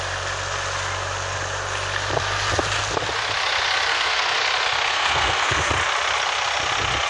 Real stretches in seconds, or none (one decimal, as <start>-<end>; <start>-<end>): 0.0-3.9; 4.4-4.9; 5.7-7.1